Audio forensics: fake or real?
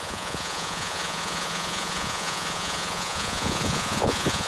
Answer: fake